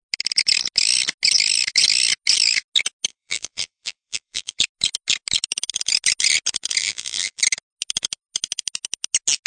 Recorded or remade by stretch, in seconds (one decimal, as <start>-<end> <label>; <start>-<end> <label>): 0.0-3.1 recorded; 3.1-4.6 remade; 4.6-6.8 recorded; 6.8-7.4 remade; 7.4-9.5 recorded